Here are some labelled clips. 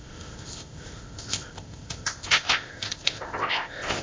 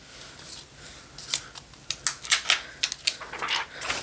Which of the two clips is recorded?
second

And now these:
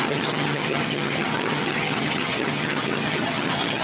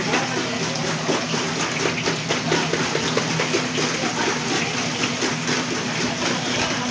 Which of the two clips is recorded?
second